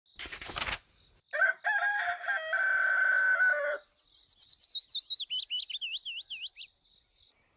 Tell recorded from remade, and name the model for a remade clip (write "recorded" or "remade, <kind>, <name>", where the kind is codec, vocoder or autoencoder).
recorded